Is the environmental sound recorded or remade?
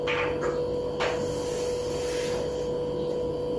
recorded